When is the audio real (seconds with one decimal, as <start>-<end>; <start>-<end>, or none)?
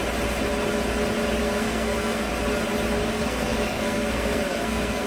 0.0-1.4; 2.3-3.0